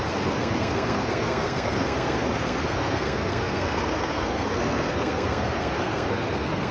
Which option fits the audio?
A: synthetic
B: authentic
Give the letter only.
A